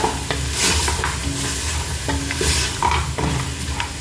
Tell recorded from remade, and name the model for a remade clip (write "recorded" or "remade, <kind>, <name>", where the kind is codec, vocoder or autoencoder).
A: recorded